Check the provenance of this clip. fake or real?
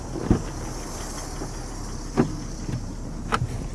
real